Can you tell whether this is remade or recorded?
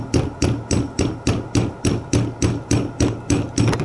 recorded